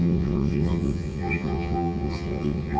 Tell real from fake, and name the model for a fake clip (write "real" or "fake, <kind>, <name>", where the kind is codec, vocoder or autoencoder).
fake, vocoder, WaveNeXt